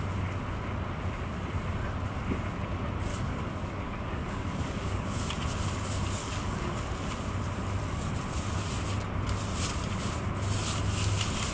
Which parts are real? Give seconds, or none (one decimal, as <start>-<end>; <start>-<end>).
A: 0.0-3.1; 5.3-6.2; 6.7-11.5